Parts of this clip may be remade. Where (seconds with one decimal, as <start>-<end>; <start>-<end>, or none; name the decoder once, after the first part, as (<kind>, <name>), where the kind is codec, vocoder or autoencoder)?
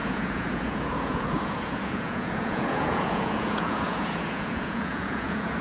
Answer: 0.0-5.6 (vocoder, Vocos)